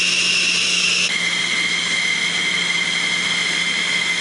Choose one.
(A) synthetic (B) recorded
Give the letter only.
B